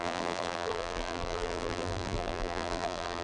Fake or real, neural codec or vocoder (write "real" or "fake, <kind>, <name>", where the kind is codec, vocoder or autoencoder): fake, vocoder, BigVGAN v2